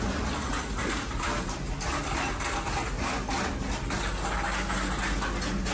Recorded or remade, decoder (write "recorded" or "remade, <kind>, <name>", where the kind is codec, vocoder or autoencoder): recorded